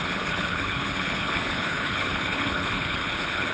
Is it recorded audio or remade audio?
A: remade